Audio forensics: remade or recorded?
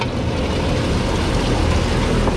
recorded